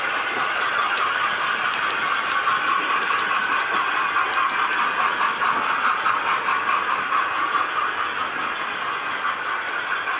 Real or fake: real